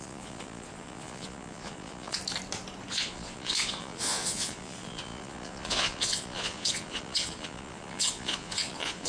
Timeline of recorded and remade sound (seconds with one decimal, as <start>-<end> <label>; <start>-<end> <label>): 0.0-2.2 remade; 2.2-2.9 recorded; 2.9-9.1 remade